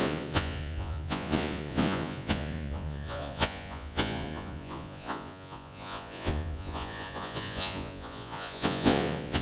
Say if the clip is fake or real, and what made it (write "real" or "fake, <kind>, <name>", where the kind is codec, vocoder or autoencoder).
fake, vocoder, Vocos